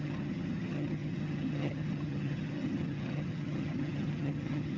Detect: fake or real fake